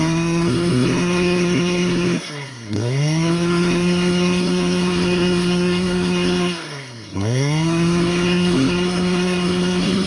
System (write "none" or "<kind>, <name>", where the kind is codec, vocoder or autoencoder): codec, SNAC